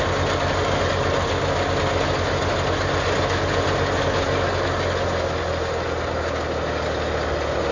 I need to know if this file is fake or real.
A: real